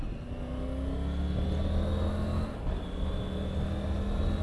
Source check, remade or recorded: recorded